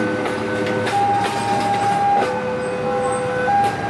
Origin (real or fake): real